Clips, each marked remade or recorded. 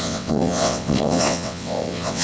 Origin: remade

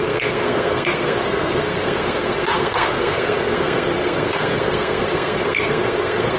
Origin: remade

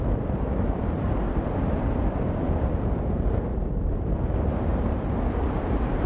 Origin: recorded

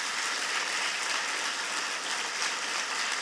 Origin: recorded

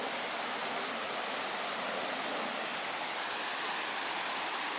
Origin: recorded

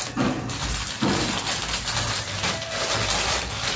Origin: recorded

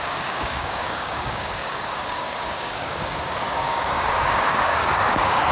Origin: remade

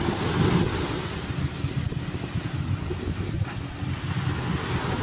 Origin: recorded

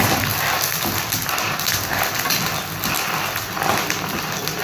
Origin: remade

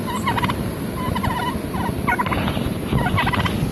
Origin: recorded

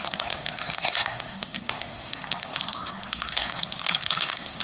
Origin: remade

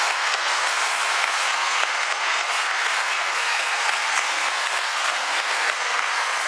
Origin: remade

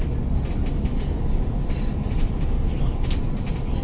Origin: recorded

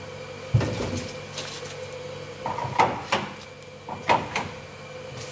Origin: recorded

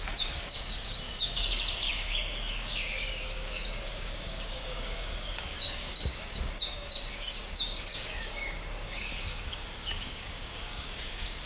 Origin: remade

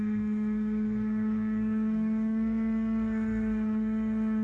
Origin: remade